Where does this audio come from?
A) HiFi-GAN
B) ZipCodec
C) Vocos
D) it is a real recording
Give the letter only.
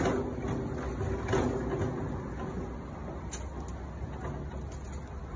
D